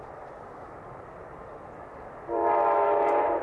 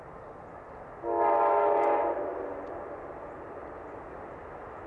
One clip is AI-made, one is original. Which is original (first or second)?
second